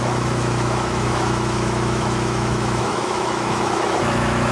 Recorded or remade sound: remade